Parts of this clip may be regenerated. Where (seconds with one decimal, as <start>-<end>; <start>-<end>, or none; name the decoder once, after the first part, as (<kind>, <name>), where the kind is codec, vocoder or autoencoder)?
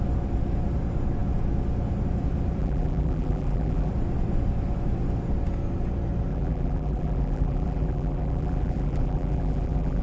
2.6-3.9 (vocoder, BigVGAN v2); 6.3-10.0